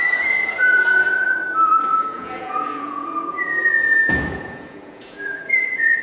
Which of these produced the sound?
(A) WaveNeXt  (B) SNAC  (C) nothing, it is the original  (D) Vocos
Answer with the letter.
D